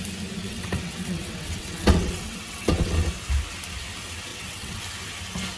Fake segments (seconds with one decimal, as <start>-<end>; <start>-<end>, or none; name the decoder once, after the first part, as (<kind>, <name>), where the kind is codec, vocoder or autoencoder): 0.4-3.1 (vocoder, WaveNeXt); 4.3-4.8